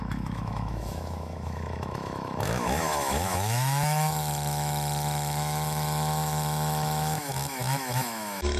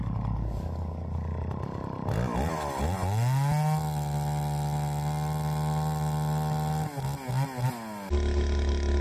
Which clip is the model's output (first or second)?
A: first